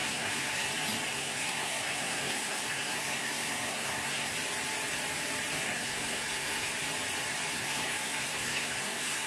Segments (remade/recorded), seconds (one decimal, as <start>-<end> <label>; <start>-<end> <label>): 0.0-0.7 remade; 0.7-1.1 recorded; 1.1-4.3 remade; 4.3-5.6 recorded; 5.6-6.7 remade; 6.7-7.5 recorded; 7.5-9.3 remade